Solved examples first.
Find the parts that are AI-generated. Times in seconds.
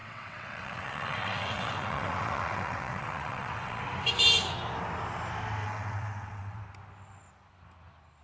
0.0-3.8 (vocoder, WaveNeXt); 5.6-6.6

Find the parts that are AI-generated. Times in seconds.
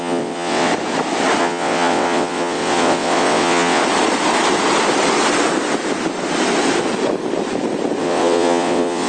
0.0-0.7 (vocoder, WaveNeXt); 1.4-3.8; 8.0-9.1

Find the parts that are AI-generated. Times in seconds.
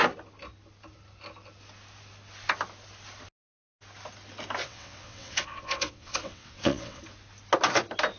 4.6-7.0 (vocoder, WaveNeXt)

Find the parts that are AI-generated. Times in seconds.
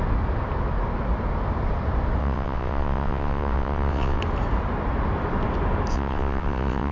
2.2-4.2 (vocoder, WaveNeXt); 5.9-6.9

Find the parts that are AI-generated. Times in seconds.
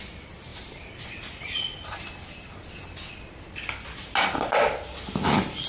none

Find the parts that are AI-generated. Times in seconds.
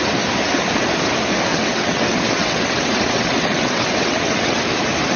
1.5-4.6 (vocoder, WaveNeXt)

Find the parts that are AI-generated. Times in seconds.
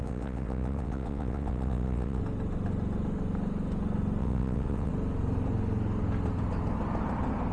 0.0-2.2 (vocoder, WaveNeXt); 4.2-4.9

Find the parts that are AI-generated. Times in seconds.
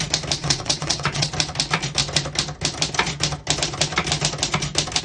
0.4-1.3 (vocoder, WaveNeXt)